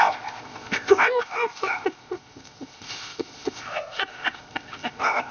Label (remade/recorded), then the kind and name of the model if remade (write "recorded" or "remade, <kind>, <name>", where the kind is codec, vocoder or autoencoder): remade, codec, ZipCodec